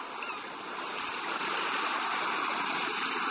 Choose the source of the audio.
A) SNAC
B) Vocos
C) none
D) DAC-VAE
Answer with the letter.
C